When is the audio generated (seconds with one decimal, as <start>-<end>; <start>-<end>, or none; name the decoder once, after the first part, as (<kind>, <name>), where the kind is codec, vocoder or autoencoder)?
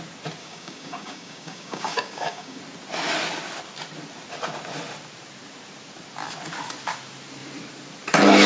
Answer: 0.4-2.6 (codec, DAC)